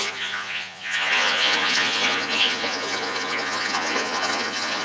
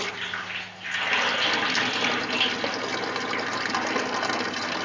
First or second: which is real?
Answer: second